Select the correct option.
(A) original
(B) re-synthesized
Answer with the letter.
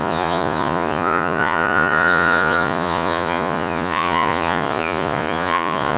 B